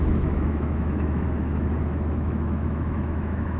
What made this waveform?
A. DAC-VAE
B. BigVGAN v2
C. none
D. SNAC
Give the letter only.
A